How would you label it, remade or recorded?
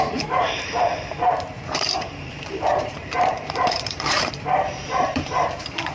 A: remade